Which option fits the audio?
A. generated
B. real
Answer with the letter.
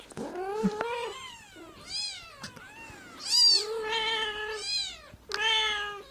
B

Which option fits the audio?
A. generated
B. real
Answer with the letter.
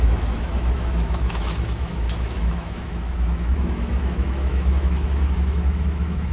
A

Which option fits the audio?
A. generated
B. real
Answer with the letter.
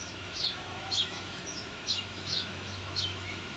A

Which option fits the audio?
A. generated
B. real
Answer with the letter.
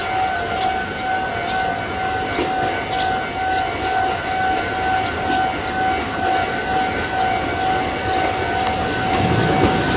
B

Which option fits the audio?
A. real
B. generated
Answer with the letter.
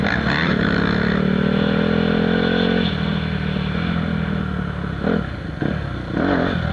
A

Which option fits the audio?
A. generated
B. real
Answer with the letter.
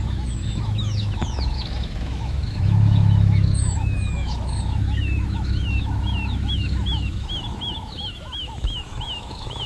A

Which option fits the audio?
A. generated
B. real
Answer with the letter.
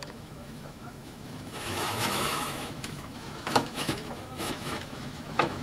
A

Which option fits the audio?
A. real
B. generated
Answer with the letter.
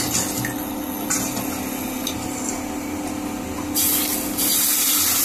A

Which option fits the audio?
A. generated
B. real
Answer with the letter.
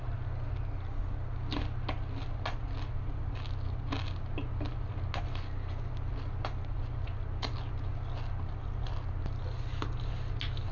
B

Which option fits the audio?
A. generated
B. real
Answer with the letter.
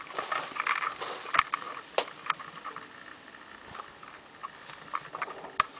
B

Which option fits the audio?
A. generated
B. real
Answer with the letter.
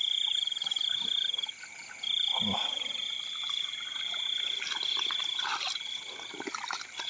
B